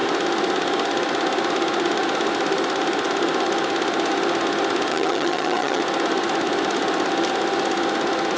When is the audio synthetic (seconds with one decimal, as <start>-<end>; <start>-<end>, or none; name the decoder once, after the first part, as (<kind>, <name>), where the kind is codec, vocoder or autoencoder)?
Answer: 4.9-5.8 (vocoder, HiFi-GAN)